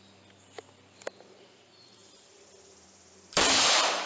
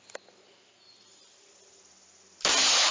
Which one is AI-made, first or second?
first